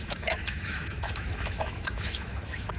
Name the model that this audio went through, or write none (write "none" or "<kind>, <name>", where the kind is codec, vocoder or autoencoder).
autoencoder, DAC-VAE